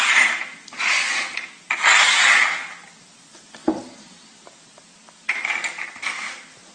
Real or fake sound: real